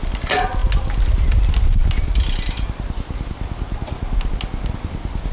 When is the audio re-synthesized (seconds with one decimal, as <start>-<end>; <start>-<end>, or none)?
none